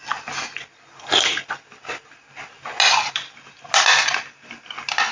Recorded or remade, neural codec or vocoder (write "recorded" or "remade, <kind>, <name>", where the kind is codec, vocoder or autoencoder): recorded